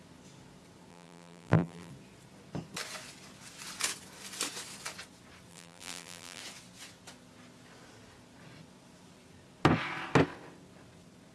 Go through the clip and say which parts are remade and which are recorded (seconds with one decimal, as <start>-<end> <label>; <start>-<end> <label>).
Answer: 0.0-0.9 recorded; 0.9-1.9 remade; 1.9-5.5 recorded; 5.5-6.4 remade; 6.4-11.3 recorded